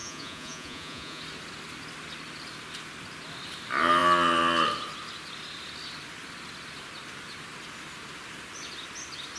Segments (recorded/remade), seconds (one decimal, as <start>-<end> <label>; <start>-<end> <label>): 0.0-1.2 remade; 1.2-9.4 recorded